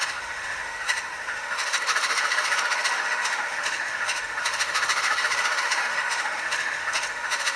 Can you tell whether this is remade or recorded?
remade